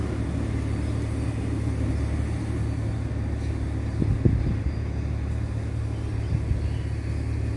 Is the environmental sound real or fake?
real